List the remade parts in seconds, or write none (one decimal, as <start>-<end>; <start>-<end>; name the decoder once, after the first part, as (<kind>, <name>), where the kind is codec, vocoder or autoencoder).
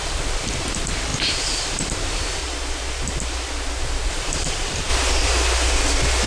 0.0-2.4 (vocoder, BigVGAN v2); 4.1-4.9